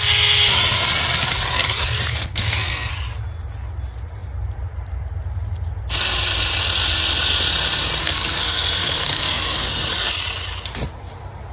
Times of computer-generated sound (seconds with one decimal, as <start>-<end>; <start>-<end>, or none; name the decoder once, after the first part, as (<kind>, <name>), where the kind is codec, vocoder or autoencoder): 2.1-2.9 (codec, SNAC); 8.0-9.8